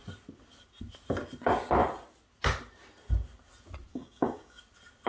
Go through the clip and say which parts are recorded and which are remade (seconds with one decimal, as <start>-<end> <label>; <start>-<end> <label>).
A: 0.0-3.9 recorded; 3.9-4.6 remade; 4.6-5.1 recorded